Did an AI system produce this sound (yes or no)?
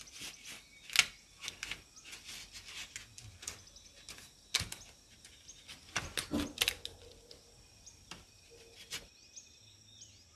no